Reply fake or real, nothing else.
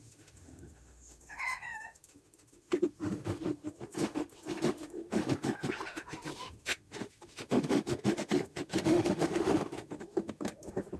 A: fake